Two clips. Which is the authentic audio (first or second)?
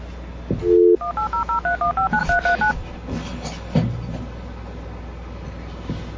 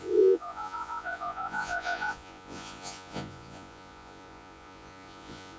first